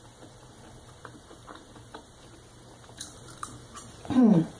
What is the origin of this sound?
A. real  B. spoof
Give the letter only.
B